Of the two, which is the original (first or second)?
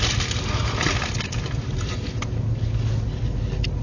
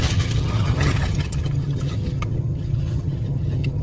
first